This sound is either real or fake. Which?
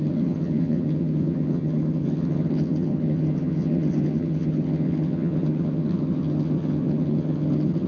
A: fake